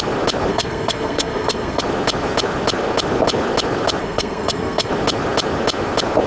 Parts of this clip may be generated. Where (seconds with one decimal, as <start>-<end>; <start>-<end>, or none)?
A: 0.5-1.8; 4.0-4.9

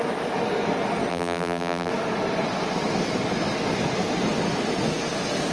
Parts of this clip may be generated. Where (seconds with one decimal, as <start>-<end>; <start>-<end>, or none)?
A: 1.1-1.9

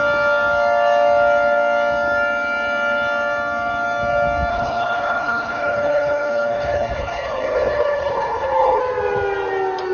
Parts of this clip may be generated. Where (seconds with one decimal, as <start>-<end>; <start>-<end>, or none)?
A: 4.5-8.8

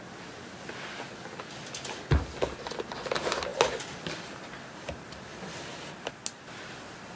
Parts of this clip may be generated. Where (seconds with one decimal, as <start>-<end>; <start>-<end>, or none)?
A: none

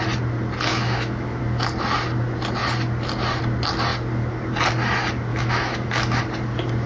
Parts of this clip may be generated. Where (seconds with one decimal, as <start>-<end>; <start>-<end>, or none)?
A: 0.7-1.4; 5.3-6.2

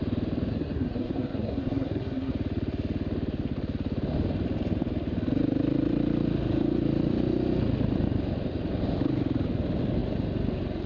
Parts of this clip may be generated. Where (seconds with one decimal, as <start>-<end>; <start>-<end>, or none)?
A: 0.5-2.3

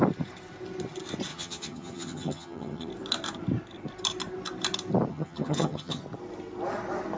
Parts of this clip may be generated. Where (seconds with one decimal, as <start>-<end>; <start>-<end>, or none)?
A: 1.3-2.9; 5.1-6.0

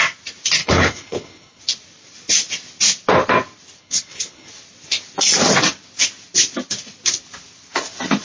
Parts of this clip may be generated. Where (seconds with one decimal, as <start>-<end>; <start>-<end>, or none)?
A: 0.6-1.6; 3.8-4.5